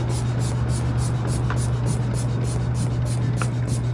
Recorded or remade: recorded